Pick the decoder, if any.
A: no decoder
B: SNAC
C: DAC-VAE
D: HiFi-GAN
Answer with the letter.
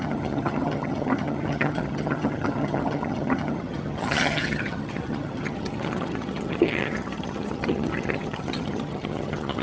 D